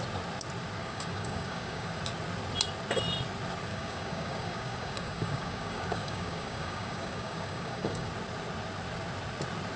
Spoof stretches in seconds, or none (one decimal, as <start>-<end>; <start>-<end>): 0.8-2.0; 3.7-8.1